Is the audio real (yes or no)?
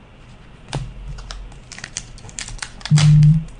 yes